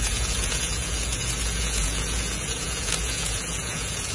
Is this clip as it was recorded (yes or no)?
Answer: no